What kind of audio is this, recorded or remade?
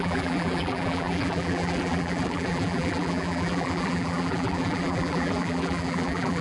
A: remade